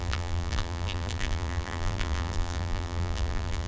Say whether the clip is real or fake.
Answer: fake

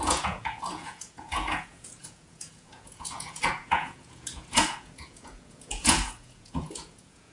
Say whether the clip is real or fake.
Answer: fake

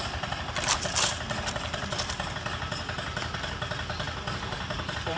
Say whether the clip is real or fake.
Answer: real